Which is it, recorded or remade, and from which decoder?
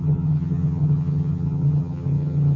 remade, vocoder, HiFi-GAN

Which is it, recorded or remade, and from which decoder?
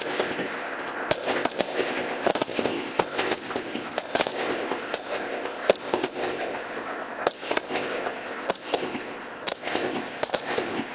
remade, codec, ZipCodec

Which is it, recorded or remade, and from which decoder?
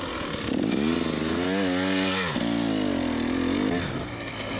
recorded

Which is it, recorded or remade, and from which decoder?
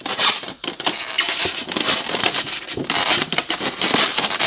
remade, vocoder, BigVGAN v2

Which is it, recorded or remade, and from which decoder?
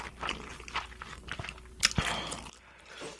recorded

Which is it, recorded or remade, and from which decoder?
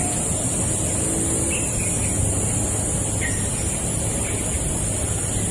recorded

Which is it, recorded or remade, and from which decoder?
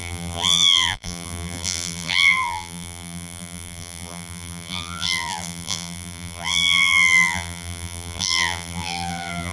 remade, vocoder, BigVGAN v2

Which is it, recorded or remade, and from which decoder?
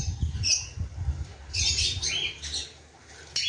recorded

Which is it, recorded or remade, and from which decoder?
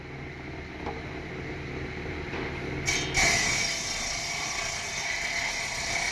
recorded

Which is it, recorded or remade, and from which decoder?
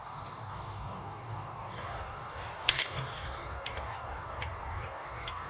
remade, codec, DAC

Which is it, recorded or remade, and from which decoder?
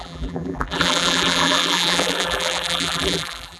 remade, vocoder, BigVGAN v2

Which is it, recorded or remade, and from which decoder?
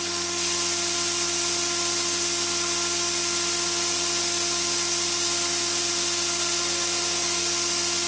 recorded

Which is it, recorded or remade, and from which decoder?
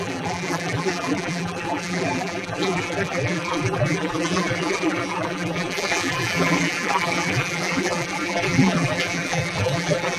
remade, vocoder, BigVGAN v2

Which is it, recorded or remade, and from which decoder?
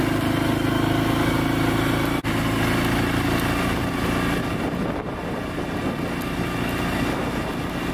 recorded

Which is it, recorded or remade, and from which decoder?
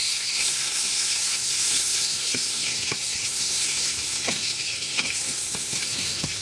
remade, codec, SNAC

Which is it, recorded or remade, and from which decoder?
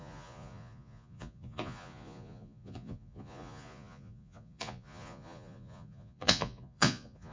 remade, vocoder, Vocos